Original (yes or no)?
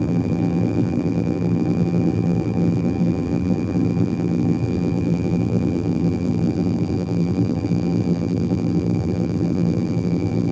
no